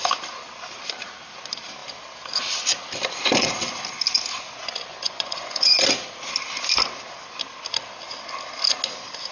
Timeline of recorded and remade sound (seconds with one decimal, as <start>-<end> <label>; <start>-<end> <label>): 0.0-4.9 recorded; 4.9-5.7 remade; 5.7-9.3 recorded

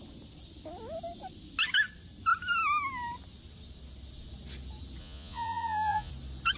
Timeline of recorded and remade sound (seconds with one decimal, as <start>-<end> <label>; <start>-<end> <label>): 0.0-5.0 recorded; 5.0-6.1 remade; 6.1-6.6 recorded

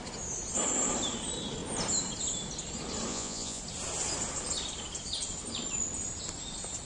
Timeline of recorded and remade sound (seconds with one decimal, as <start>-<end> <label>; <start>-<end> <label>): 0.0-3.1 recorded; 3.1-3.6 remade; 3.6-6.9 recorded

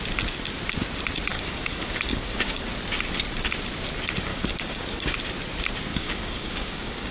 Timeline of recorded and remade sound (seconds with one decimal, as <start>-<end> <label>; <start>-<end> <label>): 0.0-1.3 recorded; 1.3-2.7 remade; 2.7-4.3 recorded; 4.3-5.2 remade; 5.2-5.9 recorded; 5.9-7.1 remade

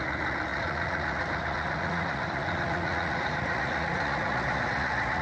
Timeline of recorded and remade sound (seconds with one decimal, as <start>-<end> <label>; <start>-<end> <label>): 0.0-5.2 remade